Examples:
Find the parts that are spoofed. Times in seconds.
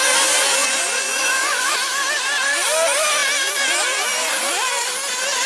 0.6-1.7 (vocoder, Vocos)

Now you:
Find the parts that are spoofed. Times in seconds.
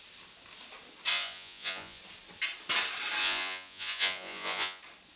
1.1-2.0 (vocoder, Vocos); 3.2-4.8